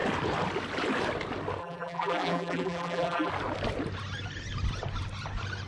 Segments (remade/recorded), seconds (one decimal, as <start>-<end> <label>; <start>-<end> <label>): 0.0-1.6 recorded; 1.6-3.3 remade; 3.3-5.7 recorded